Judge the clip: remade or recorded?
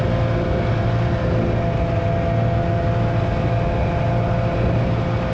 recorded